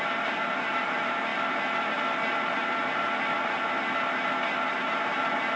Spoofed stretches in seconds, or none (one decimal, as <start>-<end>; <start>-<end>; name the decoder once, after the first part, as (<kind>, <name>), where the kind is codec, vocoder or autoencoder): 0.0-1.3 (vocoder, BigVGAN v2); 4.7-5.6